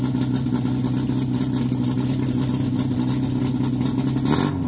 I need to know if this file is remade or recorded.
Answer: recorded